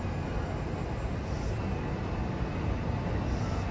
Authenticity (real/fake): real